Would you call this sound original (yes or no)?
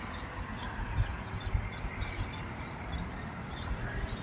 yes